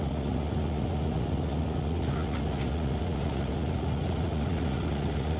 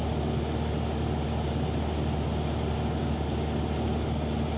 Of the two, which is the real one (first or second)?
second